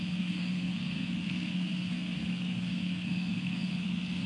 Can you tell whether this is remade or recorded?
remade